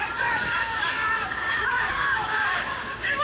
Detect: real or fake fake